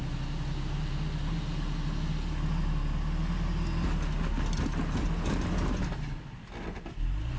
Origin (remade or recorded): recorded